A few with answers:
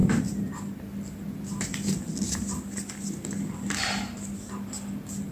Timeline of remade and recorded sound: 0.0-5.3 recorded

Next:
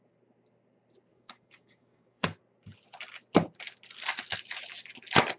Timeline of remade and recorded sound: 0.0-1.1 recorded; 1.1-2.4 remade; 2.4-5.4 recorded

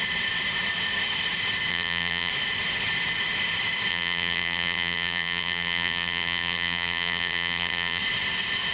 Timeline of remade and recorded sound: 0.0-1.7 recorded; 1.7-2.3 remade; 2.3-3.9 recorded; 3.9-8.0 remade; 8.0-8.7 recorded

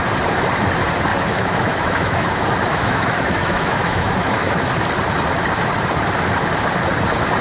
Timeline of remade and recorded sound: 0.0-1.1 recorded; 1.1-2.3 remade; 2.3-2.7 recorded; 2.7-4.7 remade; 4.7-7.4 recorded

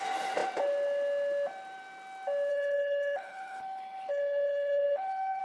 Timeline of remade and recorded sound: 0.0-2.5 recorded; 2.5-5.4 remade

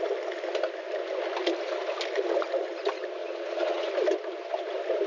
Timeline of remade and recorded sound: 0.0-3.2 recorded; 3.2-3.9 remade; 3.9-5.1 recorded

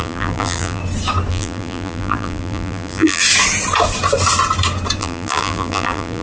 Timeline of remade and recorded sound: 0.0-0.8 remade; 0.8-1.3 recorded; 1.3-3.2 remade; 3.2-5.0 recorded; 5.0-6.2 remade

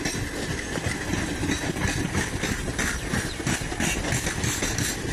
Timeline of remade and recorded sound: 0.0-5.1 recorded